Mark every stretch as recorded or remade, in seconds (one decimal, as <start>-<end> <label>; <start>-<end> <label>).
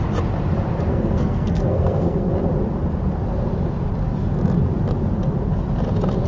0.0-0.9 recorded; 0.9-2.3 remade; 2.3-6.3 recorded